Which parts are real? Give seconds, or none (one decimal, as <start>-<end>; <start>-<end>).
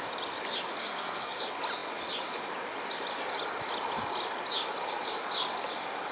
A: 0.0-0.8; 1.4-6.1